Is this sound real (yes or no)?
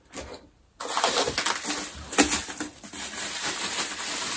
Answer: yes